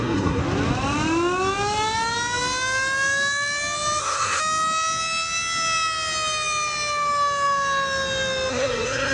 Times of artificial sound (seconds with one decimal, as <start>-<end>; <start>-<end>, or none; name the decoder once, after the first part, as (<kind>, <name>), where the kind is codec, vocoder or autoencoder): 0.0-0.4 (codec, SNAC); 4.0-4.4; 8.5-9.1